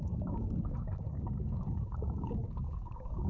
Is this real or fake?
fake